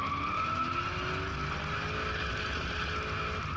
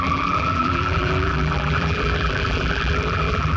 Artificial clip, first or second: second